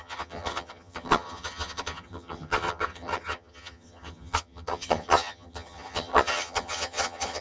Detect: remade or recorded remade